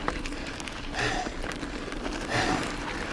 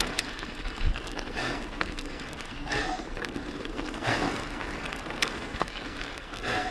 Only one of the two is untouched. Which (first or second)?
first